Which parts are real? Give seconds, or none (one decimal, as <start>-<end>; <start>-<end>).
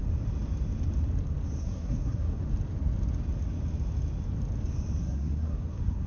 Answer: 0.0-1.6; 2.4-5.0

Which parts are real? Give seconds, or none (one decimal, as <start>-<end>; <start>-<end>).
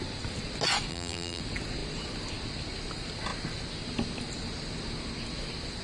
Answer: 0.0-0.9; 1.4-5.8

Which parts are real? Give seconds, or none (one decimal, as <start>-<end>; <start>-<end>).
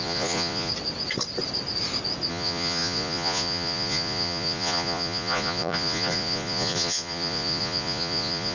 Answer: 0.7-2.3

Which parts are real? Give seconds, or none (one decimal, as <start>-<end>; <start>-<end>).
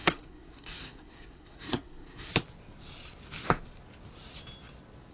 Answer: 2.3-5.1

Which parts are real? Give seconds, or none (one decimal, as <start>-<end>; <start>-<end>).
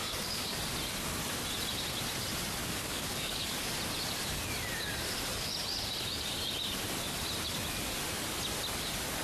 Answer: 0.6-2.6; 3.7-9.2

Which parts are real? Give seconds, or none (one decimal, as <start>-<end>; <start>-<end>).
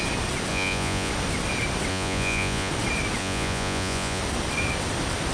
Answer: 0.0-0.5; 1.1-1.9; 2.7-3.2; 4.2-5.3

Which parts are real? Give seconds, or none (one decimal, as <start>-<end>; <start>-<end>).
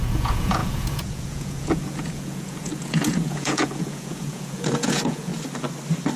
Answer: 5.3-6.2